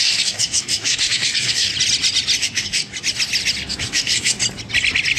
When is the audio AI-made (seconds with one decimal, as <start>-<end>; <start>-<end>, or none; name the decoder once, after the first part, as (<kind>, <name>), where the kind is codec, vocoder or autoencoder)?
0.0-1.7 (codec, DAC); 2.4-2.9; 3.7-4.4